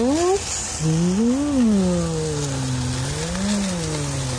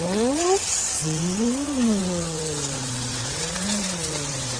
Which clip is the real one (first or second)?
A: first